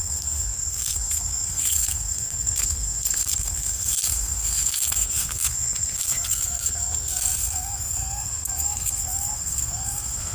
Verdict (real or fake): fake